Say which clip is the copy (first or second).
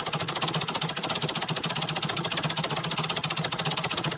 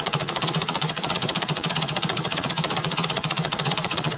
second